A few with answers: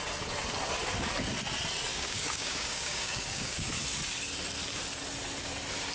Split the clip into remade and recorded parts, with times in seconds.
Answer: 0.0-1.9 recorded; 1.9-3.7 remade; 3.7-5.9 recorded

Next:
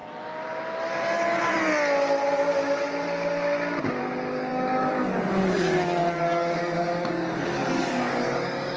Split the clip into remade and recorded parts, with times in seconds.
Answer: 0.0-4.0 recorded; 4.0-8.8 remade

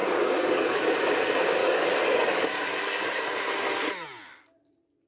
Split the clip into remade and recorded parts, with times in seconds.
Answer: 0.0-0.8 remade; 0.8-1.6 recorded; 1.6-3.4 remade; 3.4-5.1 recorded